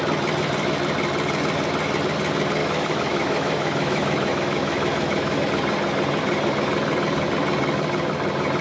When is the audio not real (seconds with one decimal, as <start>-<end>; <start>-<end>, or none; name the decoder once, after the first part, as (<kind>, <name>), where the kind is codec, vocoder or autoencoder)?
2.6-5.4 (autoencoder, DAC-VAE)